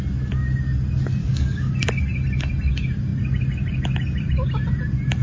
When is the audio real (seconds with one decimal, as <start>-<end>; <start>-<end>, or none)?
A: 0.0-1.2; 1.7-5.2